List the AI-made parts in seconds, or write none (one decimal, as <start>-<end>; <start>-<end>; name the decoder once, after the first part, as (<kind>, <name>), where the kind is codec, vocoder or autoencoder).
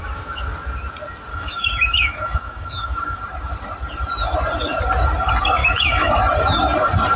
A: 1.3-3.2 (autoencoder, DAC-VAE); 5.6-6.1